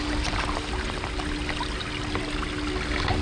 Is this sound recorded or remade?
recorded